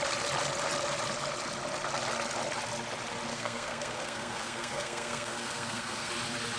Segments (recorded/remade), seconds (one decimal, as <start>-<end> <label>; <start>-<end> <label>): 0.0-3.3 recorded; 3.3-6.1 remade; 6.1-6.6 recorded